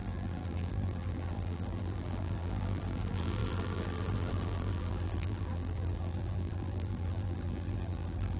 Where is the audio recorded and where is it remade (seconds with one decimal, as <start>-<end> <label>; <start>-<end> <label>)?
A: 0.0-8.4 remade